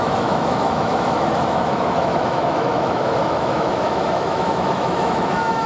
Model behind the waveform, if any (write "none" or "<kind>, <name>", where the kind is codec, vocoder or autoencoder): autoencoder, DAC-VAE